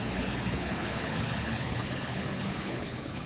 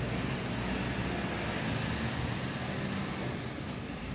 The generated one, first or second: first